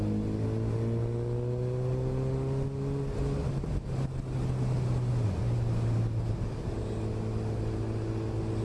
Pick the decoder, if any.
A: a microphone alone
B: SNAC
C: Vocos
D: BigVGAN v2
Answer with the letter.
A